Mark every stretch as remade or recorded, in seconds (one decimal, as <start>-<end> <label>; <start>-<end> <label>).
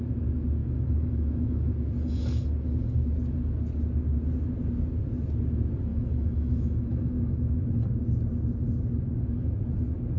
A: 0.0-0.6 recorded; 0.6-1.6 remade; 1.6-5.9 recorded; 5.9-7.5 remade; 7.5-10.2 recorded